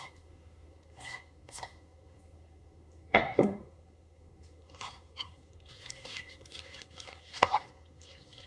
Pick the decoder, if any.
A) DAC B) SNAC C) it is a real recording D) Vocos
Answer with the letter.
B